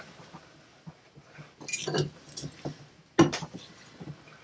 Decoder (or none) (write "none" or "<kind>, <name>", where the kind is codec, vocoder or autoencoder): none